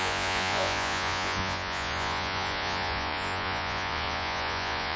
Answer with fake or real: fake